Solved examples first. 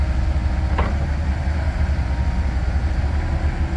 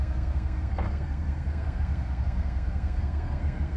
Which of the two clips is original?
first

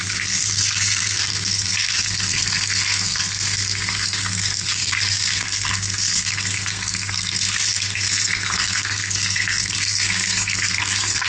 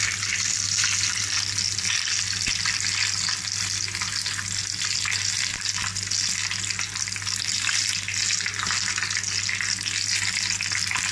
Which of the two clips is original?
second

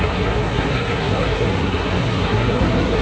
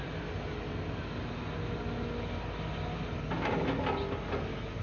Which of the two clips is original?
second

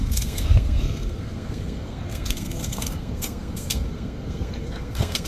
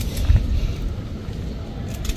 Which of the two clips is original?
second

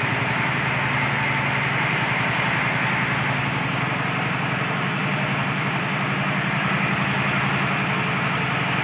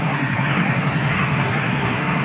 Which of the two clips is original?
first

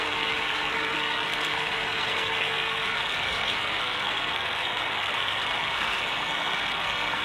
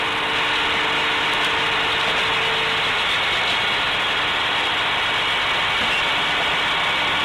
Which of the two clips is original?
second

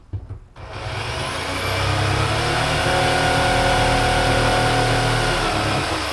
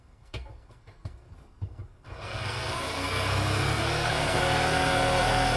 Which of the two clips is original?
first